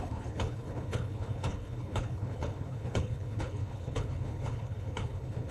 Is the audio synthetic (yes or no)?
yes